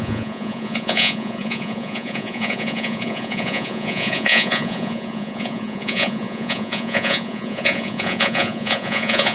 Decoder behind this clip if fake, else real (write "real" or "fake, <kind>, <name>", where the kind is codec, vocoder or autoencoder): fake, vocoder, Vocos